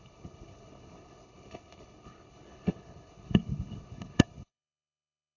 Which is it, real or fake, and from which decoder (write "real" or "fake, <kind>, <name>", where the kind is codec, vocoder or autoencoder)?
fake, codec, HILCodec